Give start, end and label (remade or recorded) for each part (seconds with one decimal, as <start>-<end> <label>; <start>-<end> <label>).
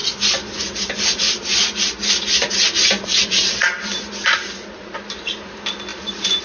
0.0-6.4 recorded